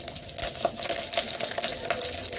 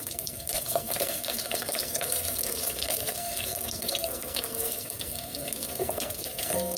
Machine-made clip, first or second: second